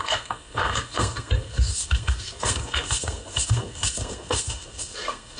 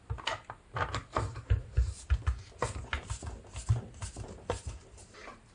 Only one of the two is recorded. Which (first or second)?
second